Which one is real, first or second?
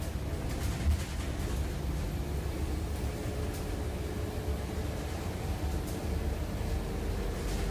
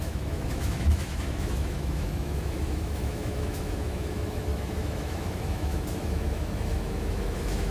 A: first